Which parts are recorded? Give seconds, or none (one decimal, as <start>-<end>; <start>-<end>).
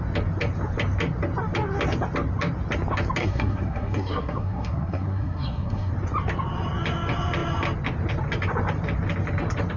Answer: 0.0-3.2; 5.9-9.8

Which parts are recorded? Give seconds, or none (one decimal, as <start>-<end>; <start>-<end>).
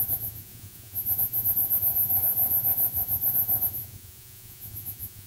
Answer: none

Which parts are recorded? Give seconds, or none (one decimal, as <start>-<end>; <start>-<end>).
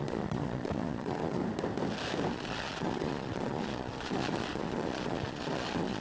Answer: 1.4-2.3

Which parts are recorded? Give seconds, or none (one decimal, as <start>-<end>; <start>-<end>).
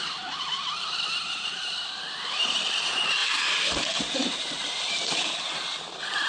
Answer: 0.0-3.2; 5.3-6.3